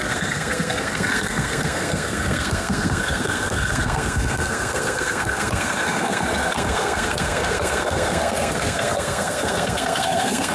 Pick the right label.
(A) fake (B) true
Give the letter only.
A